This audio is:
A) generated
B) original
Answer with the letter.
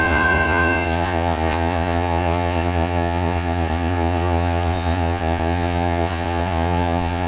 A